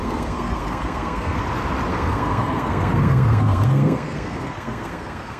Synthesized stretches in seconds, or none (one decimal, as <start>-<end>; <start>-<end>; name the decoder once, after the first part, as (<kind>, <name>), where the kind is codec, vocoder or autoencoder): 0.0-1.4 (codec, SNAC); 1.9-5.4

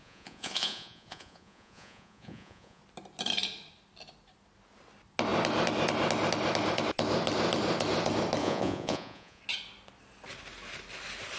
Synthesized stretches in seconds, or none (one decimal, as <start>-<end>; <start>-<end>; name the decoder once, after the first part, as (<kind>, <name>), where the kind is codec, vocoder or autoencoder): 0.0-2.8 (vocoder, Vocos); 8.4-9.4